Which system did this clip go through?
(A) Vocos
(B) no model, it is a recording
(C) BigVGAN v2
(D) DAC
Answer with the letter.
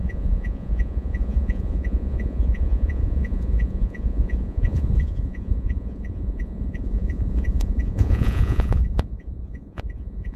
A